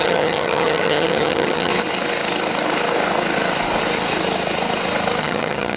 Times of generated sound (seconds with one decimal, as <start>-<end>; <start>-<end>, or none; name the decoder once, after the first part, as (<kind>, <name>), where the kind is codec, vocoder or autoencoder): 0.0-1.7 (vocoder, HiFi-GAN); 5.2-5.8